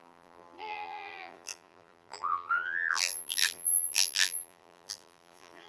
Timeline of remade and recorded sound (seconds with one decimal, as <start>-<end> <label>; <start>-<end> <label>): 0.0-5.7 remade